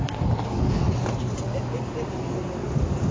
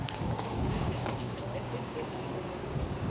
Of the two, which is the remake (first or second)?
second